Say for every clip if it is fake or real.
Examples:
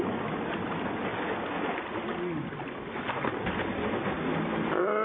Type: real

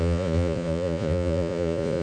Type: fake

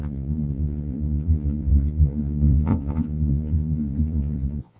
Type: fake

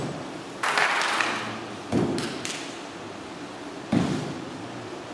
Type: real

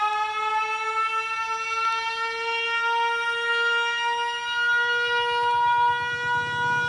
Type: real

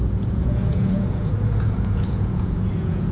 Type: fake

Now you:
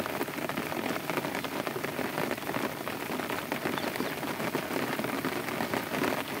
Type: real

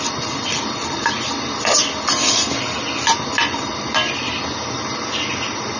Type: real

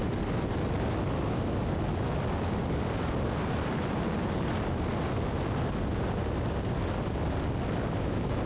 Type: real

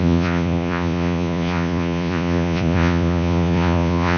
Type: fake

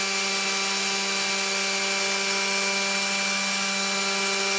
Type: real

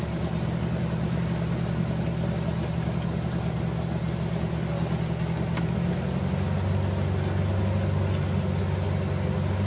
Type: real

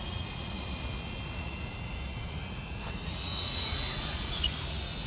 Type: fake